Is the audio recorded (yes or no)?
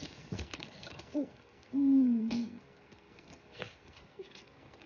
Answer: no